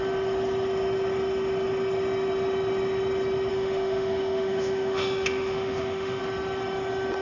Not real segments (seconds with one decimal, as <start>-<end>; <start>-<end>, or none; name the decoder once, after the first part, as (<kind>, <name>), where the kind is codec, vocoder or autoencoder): 3.5-6.2 (autoencoder, DAC-VAE)